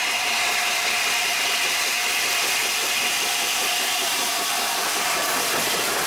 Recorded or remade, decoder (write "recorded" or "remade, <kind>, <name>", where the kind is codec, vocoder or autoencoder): remade, vocoder, BigVGAN v2